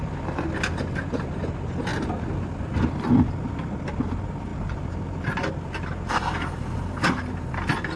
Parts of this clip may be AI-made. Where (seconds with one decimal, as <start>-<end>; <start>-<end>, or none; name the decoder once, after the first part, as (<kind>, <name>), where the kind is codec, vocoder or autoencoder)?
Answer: none